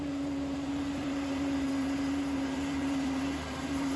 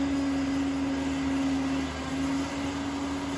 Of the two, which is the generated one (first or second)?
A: first